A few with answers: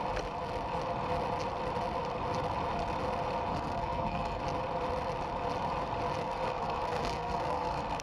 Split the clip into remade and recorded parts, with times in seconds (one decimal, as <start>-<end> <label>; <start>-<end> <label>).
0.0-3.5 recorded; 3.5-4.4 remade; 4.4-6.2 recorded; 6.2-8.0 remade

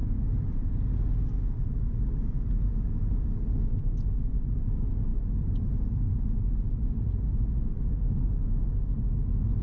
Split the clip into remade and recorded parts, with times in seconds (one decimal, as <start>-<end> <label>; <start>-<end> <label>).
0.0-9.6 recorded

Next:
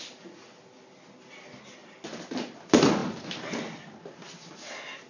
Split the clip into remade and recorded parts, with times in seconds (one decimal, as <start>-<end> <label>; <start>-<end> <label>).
0.0-5.1 recorded

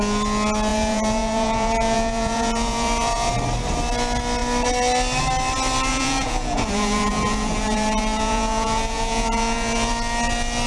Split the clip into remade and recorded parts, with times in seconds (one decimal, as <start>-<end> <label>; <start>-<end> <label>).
0.0-0.7 recorded; 0.7-3.3 remade; 3.3-5.9 recorded; 5.9-9.9 remade; 9.9-10.7 recorded